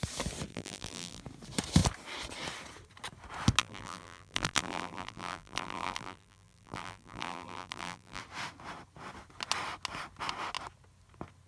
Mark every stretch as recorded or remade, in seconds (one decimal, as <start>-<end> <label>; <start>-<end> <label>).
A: 0.0-0.5 recorded; 0.5-1.2 remade; 1.2-3.6 recorded; 3.6-8.2 remade; 8.2-11.5 recorded